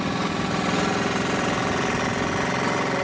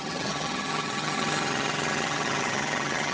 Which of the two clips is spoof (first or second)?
second